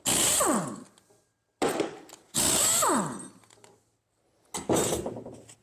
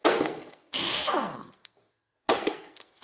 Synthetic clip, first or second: second